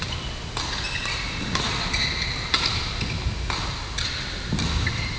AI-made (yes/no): no